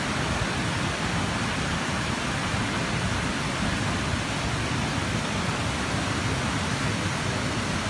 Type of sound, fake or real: real